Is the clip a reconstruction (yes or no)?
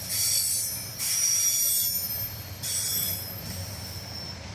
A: no